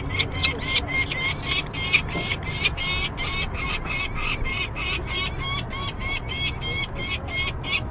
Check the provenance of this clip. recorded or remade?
recorded